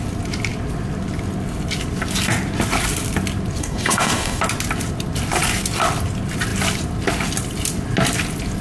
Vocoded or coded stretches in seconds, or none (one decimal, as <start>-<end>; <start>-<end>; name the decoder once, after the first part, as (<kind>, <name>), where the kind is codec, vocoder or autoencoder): 3.6-4.4 (codec, DAC)

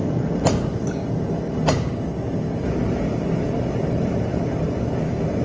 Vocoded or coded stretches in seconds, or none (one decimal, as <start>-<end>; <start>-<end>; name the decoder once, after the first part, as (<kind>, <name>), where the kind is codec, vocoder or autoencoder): none

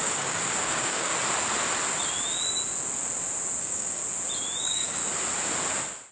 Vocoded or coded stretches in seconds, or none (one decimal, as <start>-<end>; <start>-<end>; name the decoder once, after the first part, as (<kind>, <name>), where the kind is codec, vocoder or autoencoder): 0.0-1.1 (codec, DAC); 3.6-4.0; 4.6-5.0